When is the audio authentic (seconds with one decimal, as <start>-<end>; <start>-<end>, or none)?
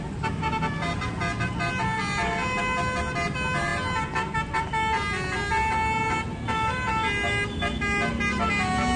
0.0-9.0